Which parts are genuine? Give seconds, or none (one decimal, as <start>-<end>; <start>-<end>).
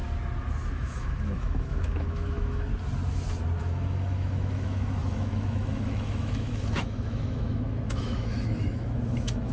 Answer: 0.0-0.7; 2.7-3.6